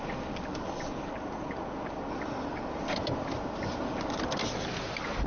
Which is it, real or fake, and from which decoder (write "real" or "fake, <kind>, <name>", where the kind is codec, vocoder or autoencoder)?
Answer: real